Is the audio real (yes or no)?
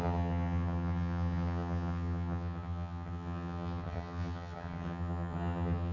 no